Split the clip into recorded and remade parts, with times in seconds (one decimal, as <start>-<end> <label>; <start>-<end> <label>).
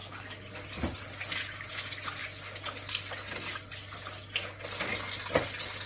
0.0-5.9 recorded